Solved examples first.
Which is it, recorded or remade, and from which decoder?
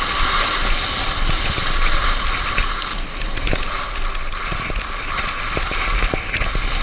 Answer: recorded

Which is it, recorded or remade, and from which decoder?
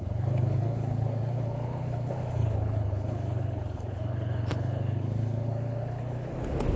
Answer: remade, codec, HILCodec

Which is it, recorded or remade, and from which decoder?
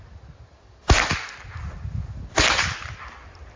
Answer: recorded